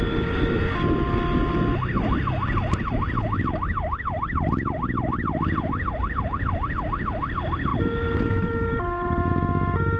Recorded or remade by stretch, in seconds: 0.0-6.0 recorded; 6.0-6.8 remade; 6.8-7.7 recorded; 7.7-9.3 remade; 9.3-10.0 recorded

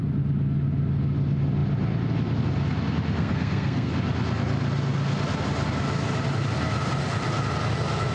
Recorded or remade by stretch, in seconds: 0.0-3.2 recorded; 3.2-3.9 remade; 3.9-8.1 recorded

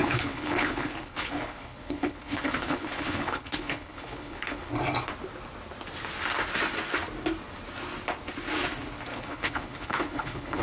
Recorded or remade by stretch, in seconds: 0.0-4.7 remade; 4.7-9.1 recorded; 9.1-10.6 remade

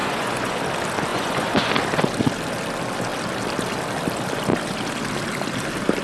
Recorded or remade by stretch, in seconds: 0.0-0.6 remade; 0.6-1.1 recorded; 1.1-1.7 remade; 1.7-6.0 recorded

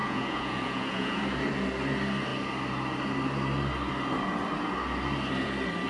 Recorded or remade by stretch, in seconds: 0.0-1.2 remade; 1.2-5.9 recorded

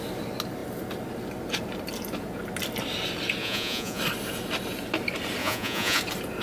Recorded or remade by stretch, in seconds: 0.0-3.4 recorded; 3.4-4.0 remade; 4.0-5.4 recorded; 5.4-6.0 remade; 6.0-6.4 recorded